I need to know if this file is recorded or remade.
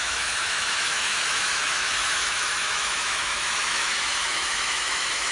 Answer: remade